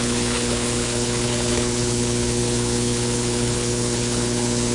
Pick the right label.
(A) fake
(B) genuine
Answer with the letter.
A